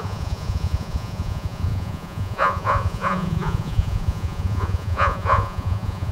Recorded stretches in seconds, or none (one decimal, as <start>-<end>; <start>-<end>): none